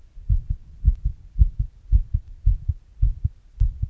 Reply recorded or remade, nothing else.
recorded